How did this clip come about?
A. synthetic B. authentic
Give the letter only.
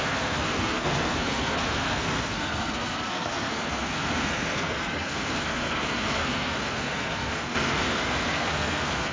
A